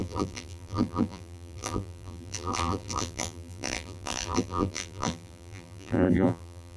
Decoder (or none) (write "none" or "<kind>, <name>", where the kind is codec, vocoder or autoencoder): vocoder, BigVGAN v2